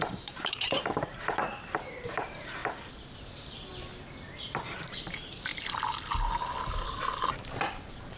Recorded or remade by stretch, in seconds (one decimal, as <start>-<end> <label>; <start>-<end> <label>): 0.0-2.6 remade; 2.6-3.1 recorded; 3.1-3.7 remade; 3.7-4.4 recorded; 4.4-5.5 remade; 5.5-7.2 recorded; 7.2-8.2 remade